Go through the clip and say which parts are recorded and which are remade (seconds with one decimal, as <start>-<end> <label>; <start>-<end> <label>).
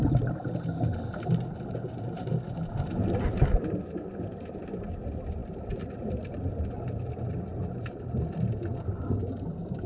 0.0-5.4 recorded; 5.4-7.1 remade; 7.1-7.5 recorded; 7.5-9.9 remade